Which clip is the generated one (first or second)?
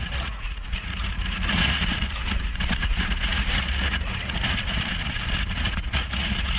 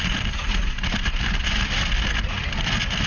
first